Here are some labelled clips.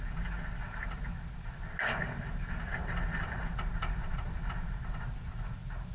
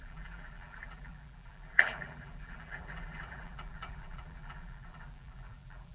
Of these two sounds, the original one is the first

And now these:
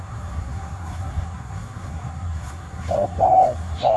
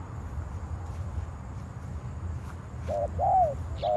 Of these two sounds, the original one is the second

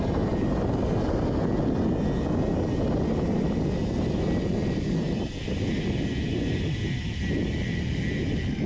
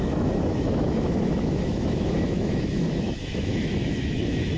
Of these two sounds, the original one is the first